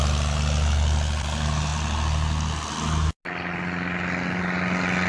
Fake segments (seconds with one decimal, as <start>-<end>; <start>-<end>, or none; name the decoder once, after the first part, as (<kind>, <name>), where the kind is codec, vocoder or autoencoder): none